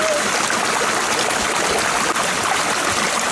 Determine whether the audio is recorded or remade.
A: recorded